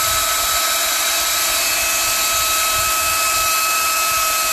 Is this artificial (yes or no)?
no